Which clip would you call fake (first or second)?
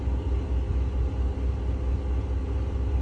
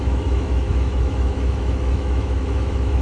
second